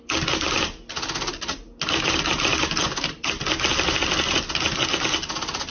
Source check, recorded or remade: recorded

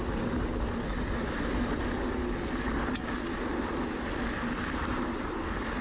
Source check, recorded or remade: recorded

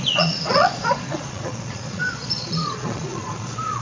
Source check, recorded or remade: remade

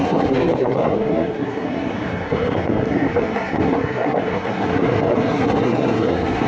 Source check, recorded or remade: remade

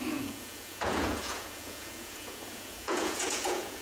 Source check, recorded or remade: remade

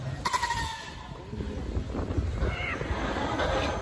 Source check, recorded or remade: recorded